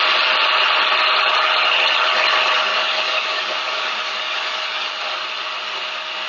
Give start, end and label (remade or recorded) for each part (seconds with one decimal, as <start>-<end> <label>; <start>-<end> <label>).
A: 0.0-2.7 recorded; 2.7-5.0 remade; 5.0-6.3 recorded